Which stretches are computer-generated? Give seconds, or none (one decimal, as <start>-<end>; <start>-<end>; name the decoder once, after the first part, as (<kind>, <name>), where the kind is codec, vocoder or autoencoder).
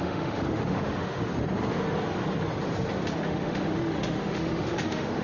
0.0-1.3 (autoencoder, DAC-VAE); 3.2-5.2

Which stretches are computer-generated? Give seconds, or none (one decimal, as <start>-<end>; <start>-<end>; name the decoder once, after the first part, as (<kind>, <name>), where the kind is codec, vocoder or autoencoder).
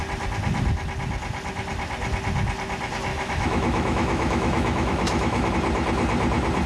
3.1-5.5 (autoencoder, DAC-VAE)